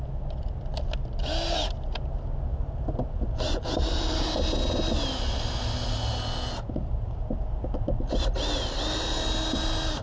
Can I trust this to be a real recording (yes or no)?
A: yes